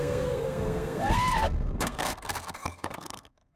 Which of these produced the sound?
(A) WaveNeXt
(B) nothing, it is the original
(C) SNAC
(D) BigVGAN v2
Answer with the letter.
C